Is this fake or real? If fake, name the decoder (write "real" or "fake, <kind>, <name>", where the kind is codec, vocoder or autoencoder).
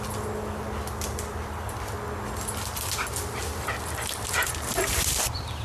real